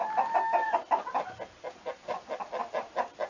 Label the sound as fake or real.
real